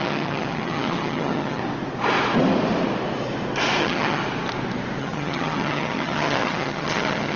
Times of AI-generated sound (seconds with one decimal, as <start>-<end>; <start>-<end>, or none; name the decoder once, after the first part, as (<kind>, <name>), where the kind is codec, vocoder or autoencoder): 0.0-1.6 (vocoder, HiFi-GAN); 3.8-4.2; 5.0-7.4